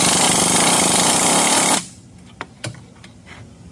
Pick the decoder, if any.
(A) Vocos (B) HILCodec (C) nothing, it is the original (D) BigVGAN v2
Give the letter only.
C